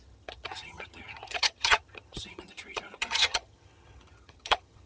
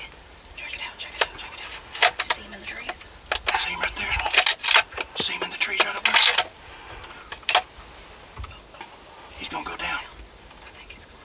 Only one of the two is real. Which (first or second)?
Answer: second